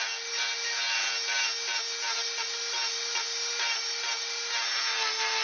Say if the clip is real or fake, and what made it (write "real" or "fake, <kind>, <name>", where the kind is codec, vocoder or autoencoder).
real